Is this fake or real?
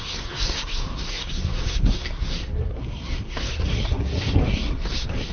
fake